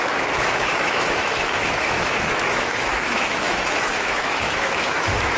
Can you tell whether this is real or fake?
fake